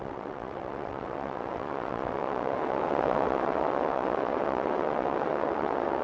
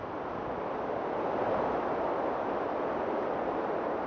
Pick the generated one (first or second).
first